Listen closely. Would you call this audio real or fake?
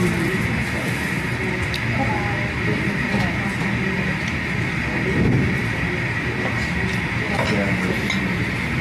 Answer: real